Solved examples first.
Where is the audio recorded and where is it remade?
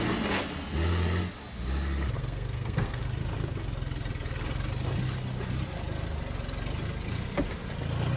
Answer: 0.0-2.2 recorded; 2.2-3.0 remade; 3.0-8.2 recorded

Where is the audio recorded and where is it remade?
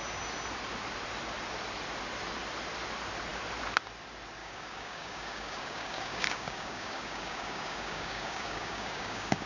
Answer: 0.0-4.4 recorded; 4.4-9.5 remade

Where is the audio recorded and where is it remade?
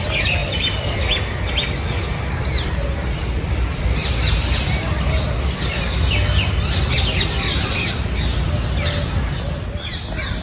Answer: 0.0-10.4 recorded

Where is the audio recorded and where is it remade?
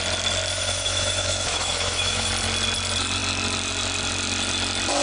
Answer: 0.0-0.5 recorded; 0.5-2.3 remade; 2.3-5.0 recorded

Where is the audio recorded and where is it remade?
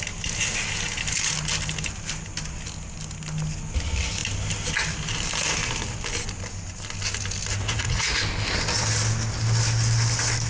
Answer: 0.0-7.6 recorded; 7.6-8.2 remade; 8.2-10.5 recorded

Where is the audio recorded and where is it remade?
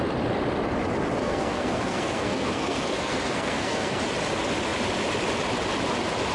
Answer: 0.0-1.2 recorded; 1.2-4.0 remade; 4.0-6.3 recorded